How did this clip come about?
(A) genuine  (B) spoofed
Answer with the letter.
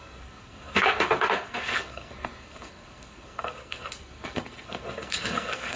B